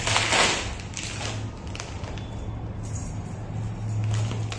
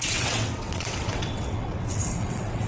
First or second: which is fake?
second